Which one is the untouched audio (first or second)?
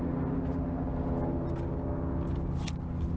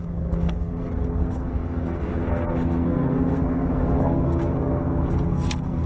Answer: first